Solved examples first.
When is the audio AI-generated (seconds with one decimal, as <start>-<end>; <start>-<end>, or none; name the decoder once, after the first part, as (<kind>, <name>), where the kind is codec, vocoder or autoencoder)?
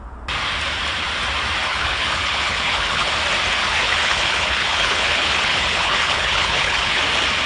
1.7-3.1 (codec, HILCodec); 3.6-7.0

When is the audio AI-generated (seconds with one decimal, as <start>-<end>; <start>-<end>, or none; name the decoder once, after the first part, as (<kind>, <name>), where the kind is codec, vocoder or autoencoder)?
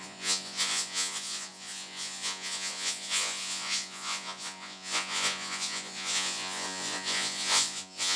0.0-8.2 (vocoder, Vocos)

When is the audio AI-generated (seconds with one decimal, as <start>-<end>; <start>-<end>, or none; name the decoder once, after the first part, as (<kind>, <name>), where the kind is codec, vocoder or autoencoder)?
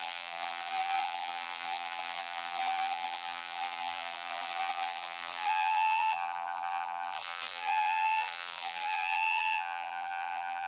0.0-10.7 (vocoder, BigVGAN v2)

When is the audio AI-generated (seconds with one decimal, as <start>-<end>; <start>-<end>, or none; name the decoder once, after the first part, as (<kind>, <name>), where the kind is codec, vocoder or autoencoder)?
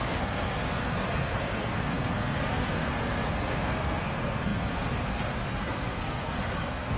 0.0-7.0 (codec, SNAC)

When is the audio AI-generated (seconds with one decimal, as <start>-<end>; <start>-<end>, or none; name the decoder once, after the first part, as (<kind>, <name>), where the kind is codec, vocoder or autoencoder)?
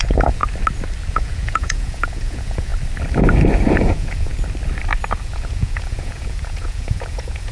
0.0-0.4 (vocoder, Vocos); 1.1-2.7; 3.7-4.3; 5.2-7.5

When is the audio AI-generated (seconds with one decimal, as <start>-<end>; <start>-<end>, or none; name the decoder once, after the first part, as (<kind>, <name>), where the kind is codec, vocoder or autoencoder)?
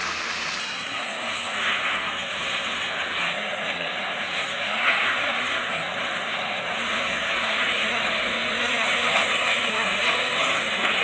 0.6-11.0 (codec, SNAC)